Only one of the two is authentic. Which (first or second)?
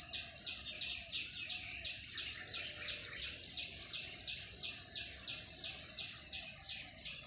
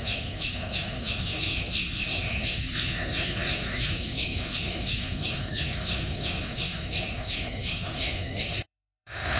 first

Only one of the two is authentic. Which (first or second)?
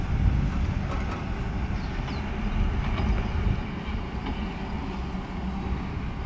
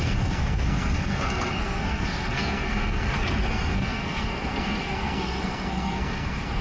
first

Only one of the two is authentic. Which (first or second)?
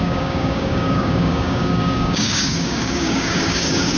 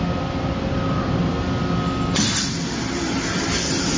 second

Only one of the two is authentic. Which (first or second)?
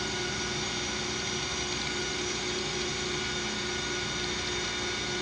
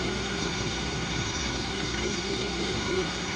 first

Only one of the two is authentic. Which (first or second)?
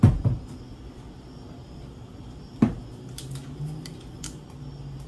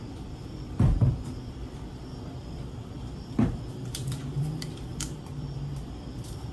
first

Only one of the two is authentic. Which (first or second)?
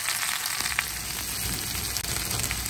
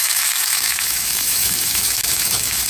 first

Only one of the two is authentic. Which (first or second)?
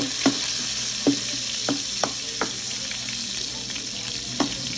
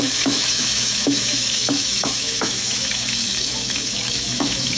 first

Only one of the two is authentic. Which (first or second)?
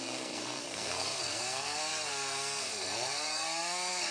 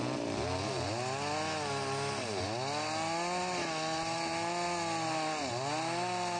second